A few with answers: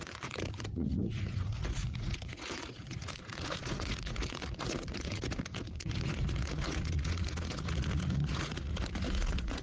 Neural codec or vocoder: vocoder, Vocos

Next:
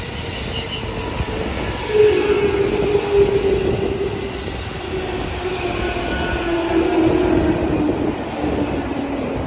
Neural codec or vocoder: none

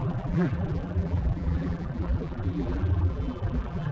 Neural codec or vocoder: vocoder, BigVGAN v2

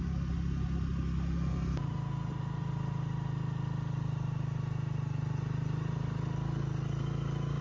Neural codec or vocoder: none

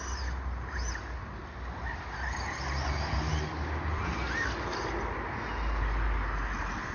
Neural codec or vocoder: none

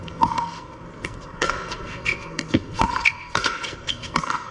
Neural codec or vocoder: codec, SNAC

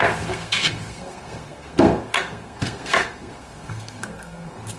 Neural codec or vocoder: codec, SNAC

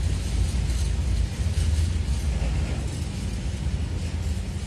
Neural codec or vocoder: none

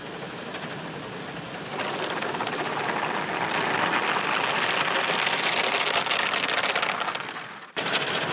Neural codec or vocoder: none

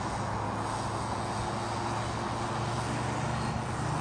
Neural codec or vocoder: none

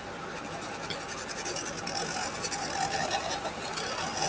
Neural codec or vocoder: none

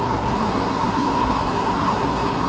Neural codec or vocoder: codec, SNAC